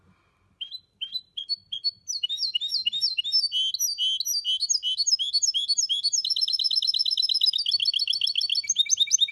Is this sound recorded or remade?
recorded